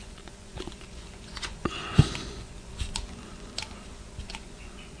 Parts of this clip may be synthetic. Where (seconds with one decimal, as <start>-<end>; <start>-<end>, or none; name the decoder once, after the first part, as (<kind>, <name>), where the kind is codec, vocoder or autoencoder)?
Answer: 0.0-5.0 (vocoder, Vocos)